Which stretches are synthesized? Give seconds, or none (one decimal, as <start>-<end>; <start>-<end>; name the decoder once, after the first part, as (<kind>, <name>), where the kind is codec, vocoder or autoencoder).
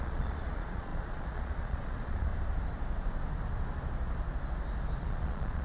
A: 0.0-2.3 (vocoder, Vocos); 5.0-5.6